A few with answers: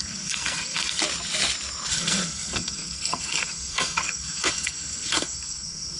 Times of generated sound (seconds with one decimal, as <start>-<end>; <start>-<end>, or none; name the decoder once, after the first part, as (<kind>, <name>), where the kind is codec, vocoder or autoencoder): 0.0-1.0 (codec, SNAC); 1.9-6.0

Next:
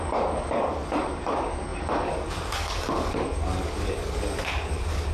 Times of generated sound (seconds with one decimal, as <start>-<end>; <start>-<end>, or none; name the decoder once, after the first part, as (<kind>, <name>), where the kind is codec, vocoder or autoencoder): 0.0-5.1 (codec, DAC)

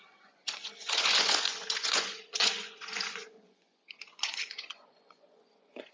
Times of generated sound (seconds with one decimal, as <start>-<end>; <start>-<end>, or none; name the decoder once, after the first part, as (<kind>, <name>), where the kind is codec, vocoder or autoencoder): 0.0-5.9 (vocoder, Vocos)

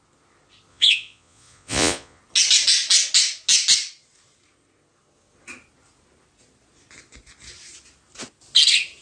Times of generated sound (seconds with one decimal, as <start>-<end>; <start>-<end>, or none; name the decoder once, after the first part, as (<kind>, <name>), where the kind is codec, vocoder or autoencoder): 0.7-2.2 (vocoder, Vocos)

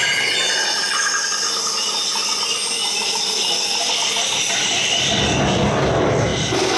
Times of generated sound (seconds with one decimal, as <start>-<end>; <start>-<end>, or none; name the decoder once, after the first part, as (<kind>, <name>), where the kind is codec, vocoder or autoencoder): 2.8-5.1 (vocoder, BigVGAN v2); 6.3-6.8